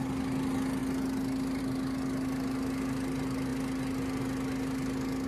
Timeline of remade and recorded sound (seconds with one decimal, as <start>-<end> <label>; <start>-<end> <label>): 0.0-5.3 recorded